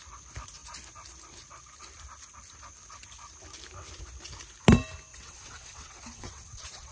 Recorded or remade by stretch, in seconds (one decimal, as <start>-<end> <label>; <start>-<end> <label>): 0.0-5.1 recorded; 5.1-6.9 remade